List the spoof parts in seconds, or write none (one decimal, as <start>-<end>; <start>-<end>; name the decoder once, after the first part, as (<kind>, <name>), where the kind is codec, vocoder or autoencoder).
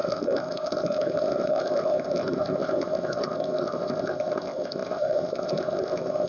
0.0-6.3 (codec, ZipCodec)